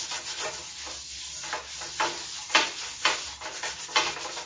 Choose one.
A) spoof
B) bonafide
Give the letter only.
B